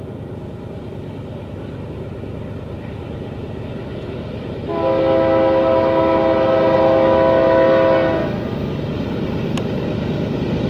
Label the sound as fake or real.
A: real